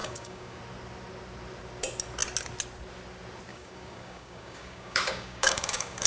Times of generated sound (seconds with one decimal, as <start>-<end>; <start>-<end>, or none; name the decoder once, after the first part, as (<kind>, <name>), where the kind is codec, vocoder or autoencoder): 0.0-0.6 (codec, DAC); 3.5-6.1